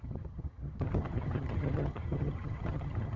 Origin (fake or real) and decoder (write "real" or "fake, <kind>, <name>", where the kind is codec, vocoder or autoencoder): fake, vocoder, HiFi-GAN